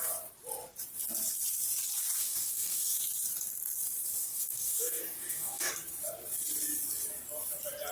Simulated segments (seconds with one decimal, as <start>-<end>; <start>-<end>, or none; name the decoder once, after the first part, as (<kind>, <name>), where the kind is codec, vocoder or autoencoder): 2.2-3.0 (codec, DAC); 4.2-5.7